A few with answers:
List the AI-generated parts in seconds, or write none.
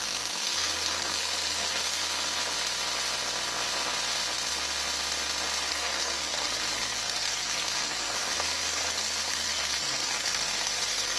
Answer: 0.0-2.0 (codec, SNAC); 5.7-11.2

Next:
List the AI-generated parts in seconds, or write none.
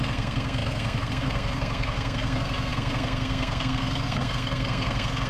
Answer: 0.0-5.3 (codec, SNAC)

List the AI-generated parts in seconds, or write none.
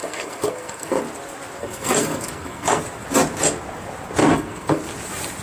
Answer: 0.0-1.0 (codec, SNAC); 1.6-2.8; 4.2-4.8